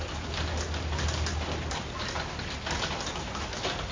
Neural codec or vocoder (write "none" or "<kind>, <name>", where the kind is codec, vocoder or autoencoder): none